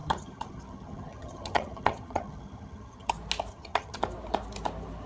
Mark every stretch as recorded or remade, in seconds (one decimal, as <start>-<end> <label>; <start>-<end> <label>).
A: 0.0-3.1 remade; 3.1-3.5 recorded; 3.5-4.0 remade; 4.0-5.1 recorded